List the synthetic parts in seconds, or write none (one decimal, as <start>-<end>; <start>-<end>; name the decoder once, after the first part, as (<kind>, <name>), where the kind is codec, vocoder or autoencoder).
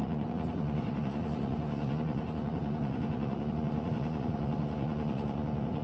0.0-5.8 (vocoder, Vocos)